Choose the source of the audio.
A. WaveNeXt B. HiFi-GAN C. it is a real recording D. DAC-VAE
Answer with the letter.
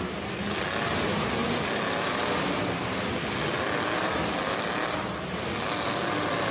C